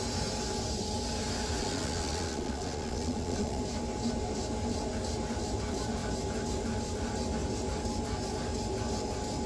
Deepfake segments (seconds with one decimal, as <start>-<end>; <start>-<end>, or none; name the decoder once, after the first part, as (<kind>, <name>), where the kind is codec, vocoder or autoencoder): 1.6-3.6 (vocoder, Vocos)